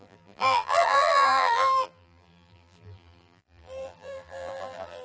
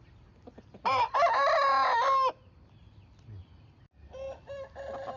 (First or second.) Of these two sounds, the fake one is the first